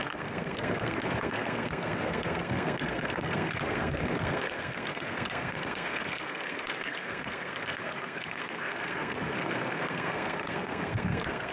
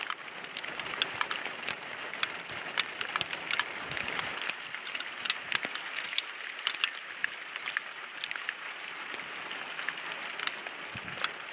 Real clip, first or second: second